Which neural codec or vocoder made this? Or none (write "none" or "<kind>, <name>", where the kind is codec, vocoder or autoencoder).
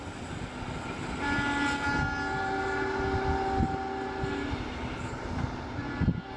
none